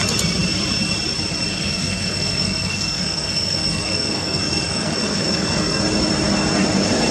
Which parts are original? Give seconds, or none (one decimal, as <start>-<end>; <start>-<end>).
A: 0.0-1.5; 5.8-7.1